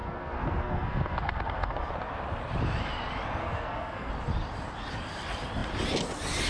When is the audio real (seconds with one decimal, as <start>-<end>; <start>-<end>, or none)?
1.9-3.4; 4.1-6.5